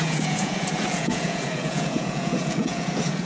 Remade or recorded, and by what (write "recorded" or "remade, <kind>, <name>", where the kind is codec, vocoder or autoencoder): remade, vocoder, Vocos